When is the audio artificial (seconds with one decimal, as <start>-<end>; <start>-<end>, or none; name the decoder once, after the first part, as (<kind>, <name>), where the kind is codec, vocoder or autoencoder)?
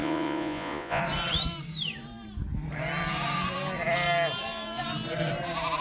0.0-1.0 (vocoder, Vocos)